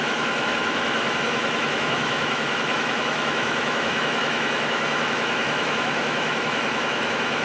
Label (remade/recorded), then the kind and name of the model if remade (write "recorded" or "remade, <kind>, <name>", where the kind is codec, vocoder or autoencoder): remade, autoencoder, DAC-VAE